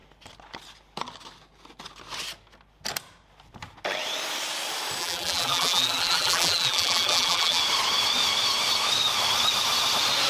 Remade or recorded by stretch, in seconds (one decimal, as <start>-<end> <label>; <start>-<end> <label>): 0.0-5.0 recorded; 5.0-7.6 remade; 7.6-10.3 recorded